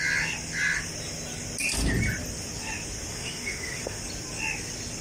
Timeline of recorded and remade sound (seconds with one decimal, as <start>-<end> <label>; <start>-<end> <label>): 0.0-3.1 recorded; 3.1-4.0 remade; 4.0-5.0 recorded